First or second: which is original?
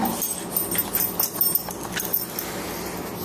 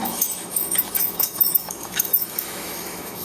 first